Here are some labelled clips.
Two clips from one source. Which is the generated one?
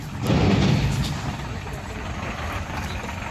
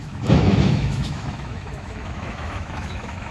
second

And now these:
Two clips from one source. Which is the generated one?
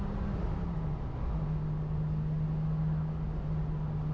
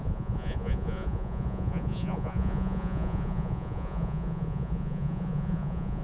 second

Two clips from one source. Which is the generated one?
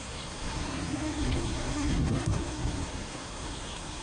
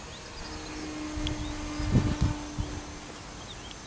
first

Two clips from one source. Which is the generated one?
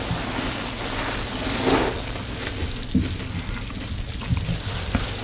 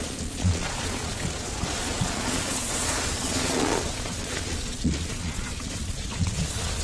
second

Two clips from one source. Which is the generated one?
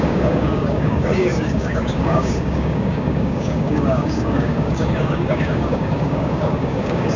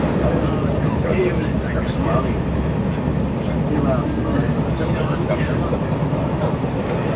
first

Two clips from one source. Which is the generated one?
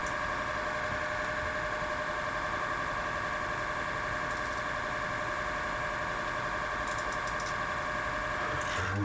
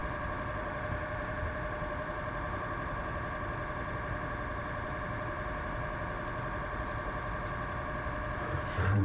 second